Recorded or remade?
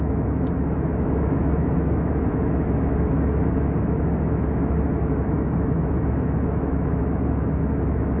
remade